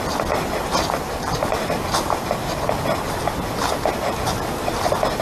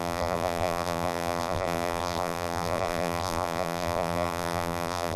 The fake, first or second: second